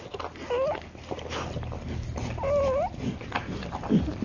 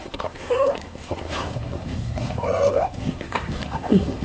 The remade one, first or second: second